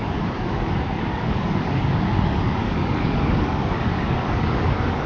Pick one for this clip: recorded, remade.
remade